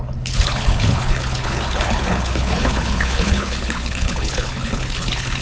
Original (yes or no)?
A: no